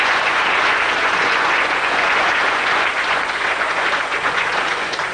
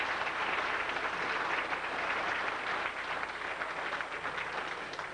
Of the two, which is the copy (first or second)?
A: first